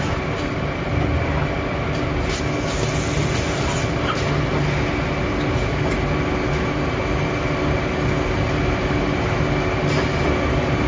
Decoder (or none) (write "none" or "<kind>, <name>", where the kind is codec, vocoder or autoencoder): none